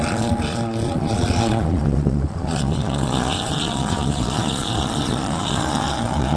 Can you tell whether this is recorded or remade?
remade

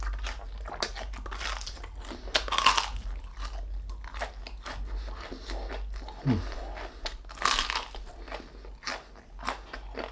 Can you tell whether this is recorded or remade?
recorded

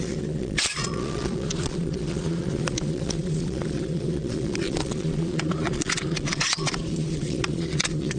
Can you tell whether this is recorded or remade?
remade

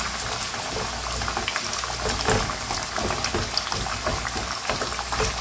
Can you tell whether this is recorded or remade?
recorded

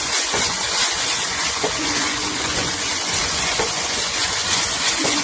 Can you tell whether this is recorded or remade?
remade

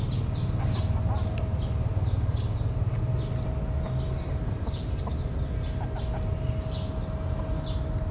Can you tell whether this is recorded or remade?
recorded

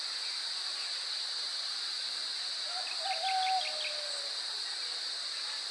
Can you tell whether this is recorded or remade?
recorded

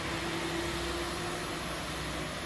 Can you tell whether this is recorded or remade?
recorded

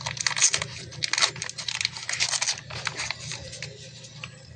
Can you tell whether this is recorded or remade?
recorded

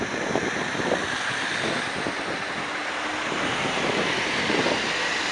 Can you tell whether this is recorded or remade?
recorded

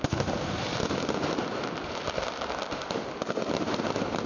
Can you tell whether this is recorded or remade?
recorded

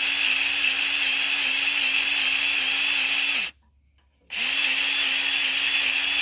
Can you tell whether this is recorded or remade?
recorded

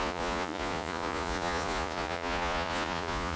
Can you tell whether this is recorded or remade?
remade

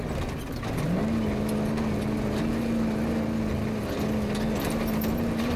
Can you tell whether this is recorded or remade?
recorded